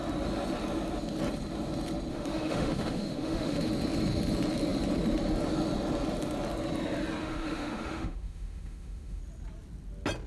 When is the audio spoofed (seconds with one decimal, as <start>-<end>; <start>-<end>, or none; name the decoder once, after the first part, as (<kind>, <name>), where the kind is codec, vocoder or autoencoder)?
2.1-3.7 (autoencoder, DAC-VAE); 7.2-9.2